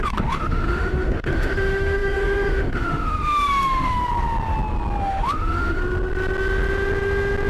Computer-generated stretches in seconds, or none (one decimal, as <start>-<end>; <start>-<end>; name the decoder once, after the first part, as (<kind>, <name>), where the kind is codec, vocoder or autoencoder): 0.0-4.0 (autoencoder, DAC-VAE); 5.0-5.8